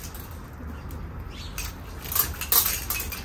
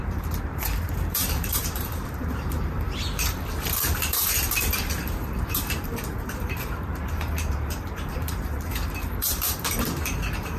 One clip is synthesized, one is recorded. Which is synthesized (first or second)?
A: second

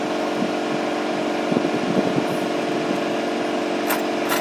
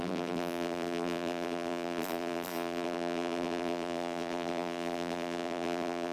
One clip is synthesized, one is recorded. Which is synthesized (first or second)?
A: second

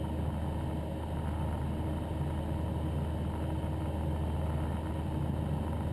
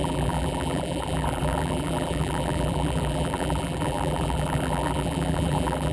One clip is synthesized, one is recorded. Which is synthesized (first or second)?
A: second